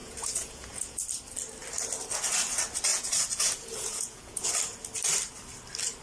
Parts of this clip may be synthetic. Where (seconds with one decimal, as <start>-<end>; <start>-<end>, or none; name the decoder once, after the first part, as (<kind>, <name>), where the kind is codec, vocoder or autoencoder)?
0.0-1.0 (vocoder, Vocos); 2.9-4.5